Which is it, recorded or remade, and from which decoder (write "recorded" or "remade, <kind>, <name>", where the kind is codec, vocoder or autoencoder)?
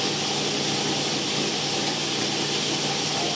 recorded